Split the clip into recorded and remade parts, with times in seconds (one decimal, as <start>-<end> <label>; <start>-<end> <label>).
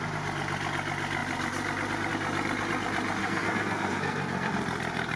0.0-3.2 recorded; 3.2-4.5 remade; 4.5-5.2 recorded